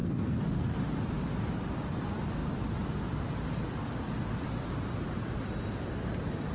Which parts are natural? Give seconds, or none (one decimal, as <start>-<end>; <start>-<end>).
0.8-6.5